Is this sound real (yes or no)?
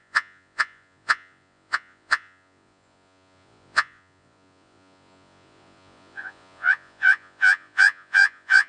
no